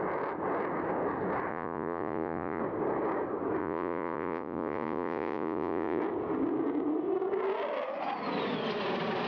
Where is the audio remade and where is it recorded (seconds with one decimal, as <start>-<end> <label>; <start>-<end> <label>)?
0.0-1.5 recorded; 1.5-2.6 remade; 2.6-3.6 recorded; 3.6-6.0 remade; 6.0-9.3 recorded